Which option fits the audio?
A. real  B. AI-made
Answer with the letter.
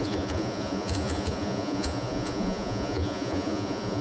B